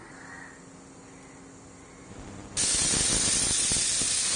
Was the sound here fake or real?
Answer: real